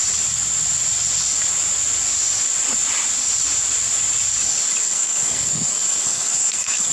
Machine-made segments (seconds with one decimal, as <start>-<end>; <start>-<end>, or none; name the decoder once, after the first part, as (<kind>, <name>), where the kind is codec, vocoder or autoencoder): 4.8-6.9 (codec, SNAC)